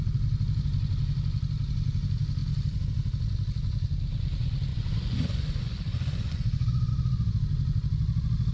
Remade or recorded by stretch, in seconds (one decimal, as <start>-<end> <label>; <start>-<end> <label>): 0.0-4.7 recorded; 4.7-6.9 remade; 6.9-8.5 recorded